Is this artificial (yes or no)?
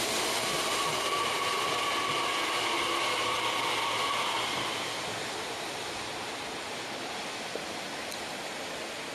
no